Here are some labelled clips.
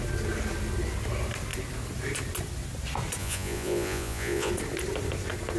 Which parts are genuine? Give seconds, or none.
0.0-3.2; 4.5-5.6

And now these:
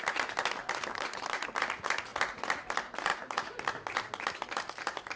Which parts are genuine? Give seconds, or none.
0.0-0.6; 1.6-5.2

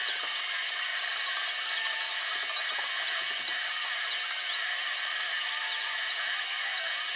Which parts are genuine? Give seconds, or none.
0.0-7.2